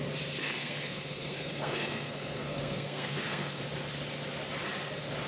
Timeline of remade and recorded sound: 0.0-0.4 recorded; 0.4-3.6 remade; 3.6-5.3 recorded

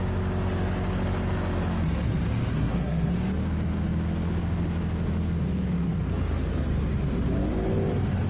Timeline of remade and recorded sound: 0.0-2.5 recorded; 2.5-3.1 remade; 3.1-8.3 recorded

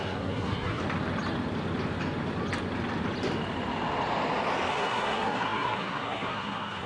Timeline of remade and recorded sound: 0.0-0.8 remade; 0.8-4.7 recorded; 4.7-6.9 remade